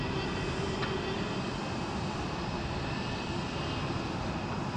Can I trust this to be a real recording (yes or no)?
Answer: yes